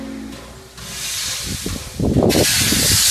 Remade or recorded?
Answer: recorded